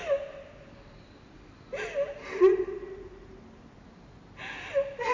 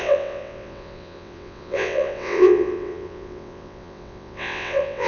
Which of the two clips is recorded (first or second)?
first